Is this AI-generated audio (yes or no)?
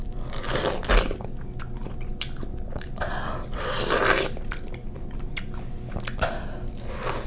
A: no